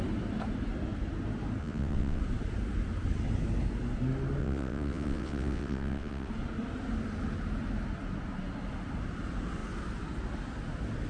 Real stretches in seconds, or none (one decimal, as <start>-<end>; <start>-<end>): 0.0-1.6; 2.2-4.4; 6.3-11.1